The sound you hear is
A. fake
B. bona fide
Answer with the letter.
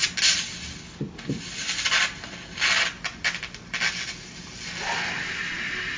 B